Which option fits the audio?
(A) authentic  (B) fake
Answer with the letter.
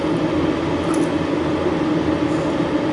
A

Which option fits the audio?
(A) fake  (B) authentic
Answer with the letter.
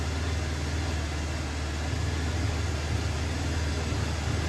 B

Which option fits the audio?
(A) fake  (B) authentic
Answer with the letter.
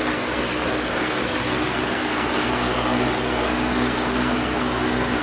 A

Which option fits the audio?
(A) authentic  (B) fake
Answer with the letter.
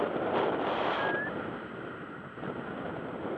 A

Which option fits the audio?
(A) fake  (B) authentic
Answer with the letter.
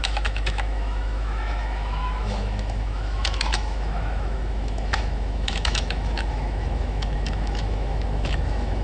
A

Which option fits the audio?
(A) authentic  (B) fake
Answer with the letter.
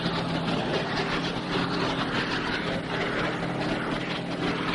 A